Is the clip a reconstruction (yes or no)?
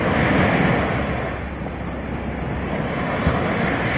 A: no